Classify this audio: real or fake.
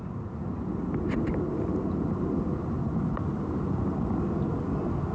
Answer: real